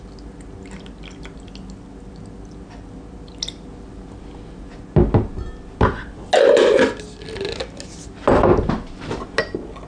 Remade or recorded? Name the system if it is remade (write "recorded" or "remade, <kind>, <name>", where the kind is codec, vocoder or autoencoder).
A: recorded